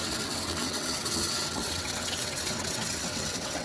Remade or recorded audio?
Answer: remade